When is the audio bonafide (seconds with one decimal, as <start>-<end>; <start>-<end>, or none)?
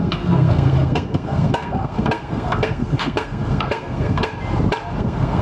4.3-5.0